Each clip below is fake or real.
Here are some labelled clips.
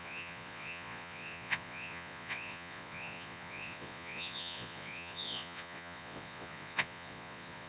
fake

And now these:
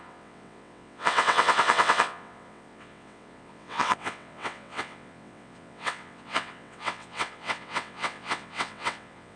fake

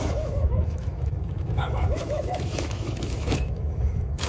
fake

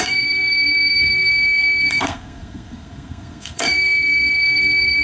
fake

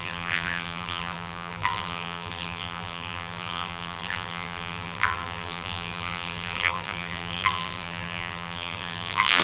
fake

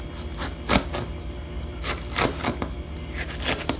real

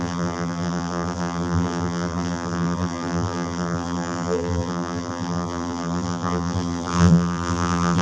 fake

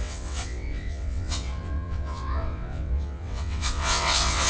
fake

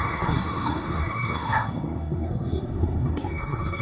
fake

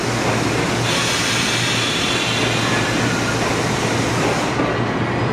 real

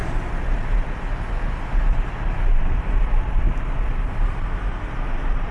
real